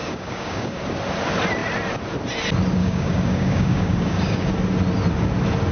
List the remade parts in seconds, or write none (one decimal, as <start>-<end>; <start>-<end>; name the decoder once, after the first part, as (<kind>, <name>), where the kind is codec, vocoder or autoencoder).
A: 0.0-0.8 (codec, DAC); 2.8-4.5